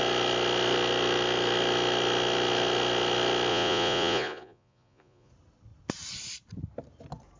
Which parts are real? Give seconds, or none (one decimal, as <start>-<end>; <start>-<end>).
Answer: 0.0-3.5; 5.3-7.4